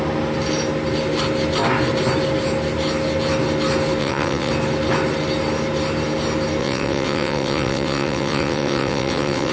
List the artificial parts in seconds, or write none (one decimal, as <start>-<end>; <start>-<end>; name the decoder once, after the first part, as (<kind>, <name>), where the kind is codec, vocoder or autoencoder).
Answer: 4.0-4.5 (vocoder, WaveNeXt); 6.6-9.5